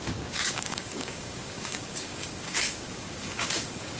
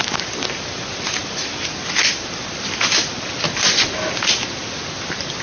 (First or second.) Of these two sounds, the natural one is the second